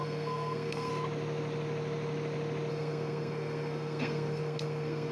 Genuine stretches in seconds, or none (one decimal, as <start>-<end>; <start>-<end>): 0.9-2.7